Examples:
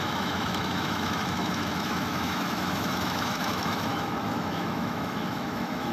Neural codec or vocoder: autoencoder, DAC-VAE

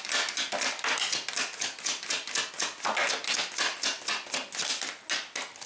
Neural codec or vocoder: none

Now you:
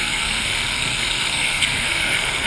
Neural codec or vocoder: codec, SNAC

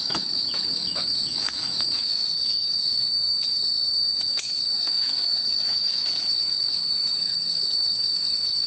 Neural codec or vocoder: autoencoder, DAC-VAE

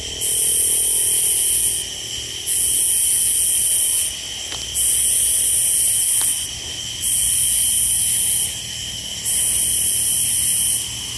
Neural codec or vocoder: none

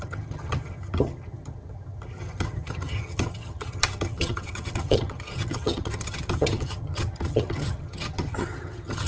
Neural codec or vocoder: vocoder, HiFi-GAN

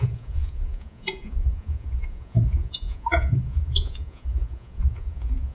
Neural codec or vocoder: vocoder, Vocos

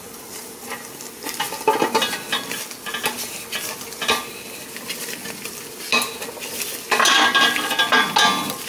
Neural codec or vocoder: none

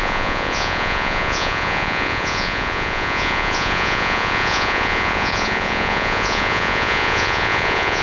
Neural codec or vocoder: vocoder, Vocos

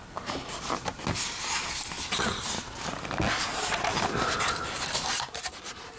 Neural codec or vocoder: none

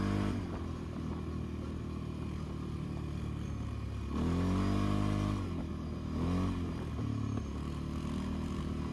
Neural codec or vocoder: none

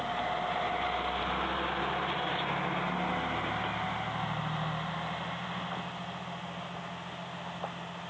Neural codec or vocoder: none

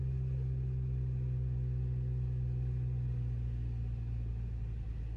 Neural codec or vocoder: none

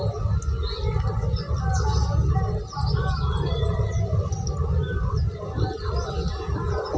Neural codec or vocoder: none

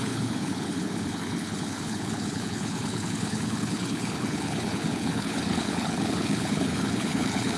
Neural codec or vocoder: codec, HILCodec